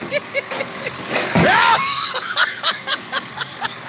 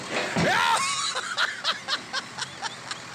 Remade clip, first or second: first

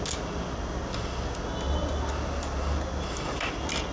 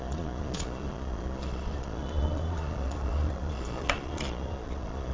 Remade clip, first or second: second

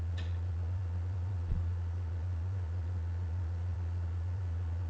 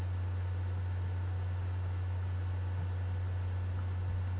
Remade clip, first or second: first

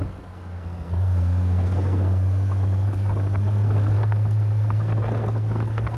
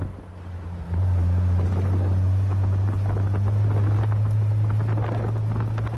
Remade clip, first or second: first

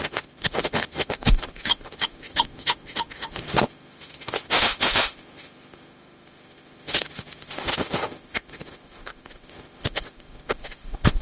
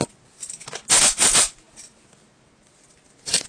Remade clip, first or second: first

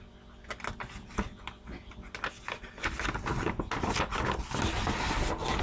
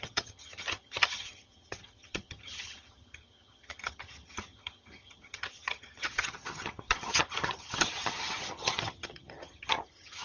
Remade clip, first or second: second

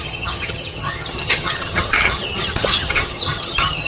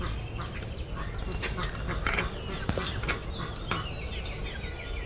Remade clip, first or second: first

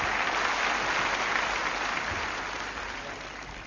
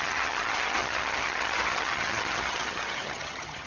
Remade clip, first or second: second